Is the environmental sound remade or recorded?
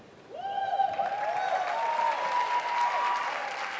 recorded